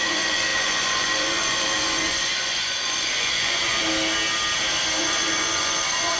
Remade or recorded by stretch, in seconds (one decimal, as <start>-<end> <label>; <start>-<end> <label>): 0.0-3.8 remade; 3.8-5.0 recorded; 5.0-6.2 remade